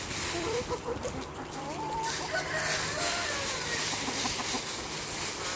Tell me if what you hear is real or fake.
real